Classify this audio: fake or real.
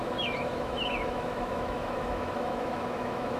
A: fake